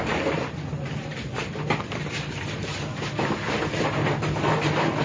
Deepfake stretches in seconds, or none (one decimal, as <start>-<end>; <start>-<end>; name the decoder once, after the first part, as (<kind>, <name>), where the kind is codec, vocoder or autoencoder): none